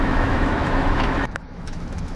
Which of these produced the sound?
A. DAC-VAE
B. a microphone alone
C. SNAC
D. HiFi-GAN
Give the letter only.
A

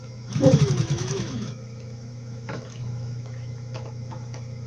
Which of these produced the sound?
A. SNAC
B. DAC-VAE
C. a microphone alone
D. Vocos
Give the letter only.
B